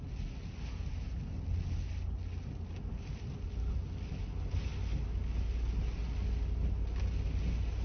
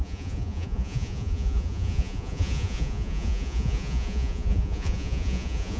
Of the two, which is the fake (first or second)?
second